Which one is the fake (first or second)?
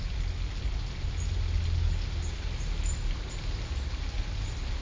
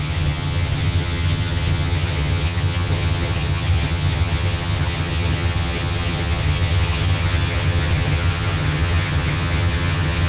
second